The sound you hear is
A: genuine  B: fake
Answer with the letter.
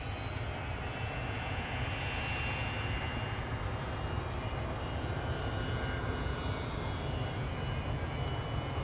A